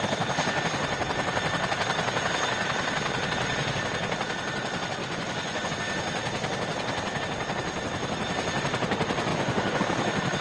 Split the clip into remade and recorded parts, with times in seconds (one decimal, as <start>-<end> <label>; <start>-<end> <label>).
0.0-5.0 recorded; 5.0-5.7 remade; 5.7-9.3 recorded; 9.3-9.8 remade; 9.8-10.4 recorded